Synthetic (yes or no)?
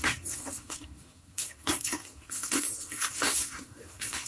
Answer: yes